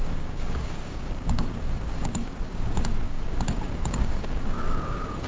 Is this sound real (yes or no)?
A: no